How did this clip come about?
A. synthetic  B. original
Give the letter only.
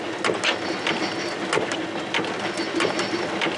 B